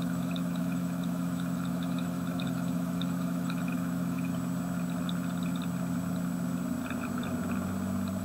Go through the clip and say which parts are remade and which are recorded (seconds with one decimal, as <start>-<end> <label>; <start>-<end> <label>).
0.0-4.3 remade; 4.3-8.2 recorded